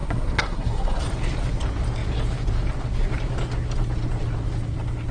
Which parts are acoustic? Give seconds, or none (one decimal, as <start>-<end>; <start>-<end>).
1.0-5.1